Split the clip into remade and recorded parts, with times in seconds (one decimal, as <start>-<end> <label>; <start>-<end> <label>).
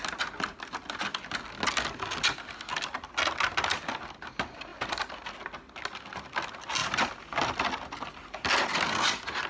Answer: 0.0-4.7 recorded; 4.7-5.4 remade; 5.4-6.8 recorded; 6.8-8.5 remade; 8.5-9.5 recorded